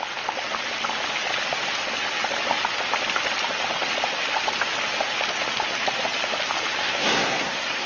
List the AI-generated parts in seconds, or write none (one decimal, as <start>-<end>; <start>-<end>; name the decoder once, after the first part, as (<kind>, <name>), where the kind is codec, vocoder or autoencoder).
6.8-7.9 (codec, SNAC)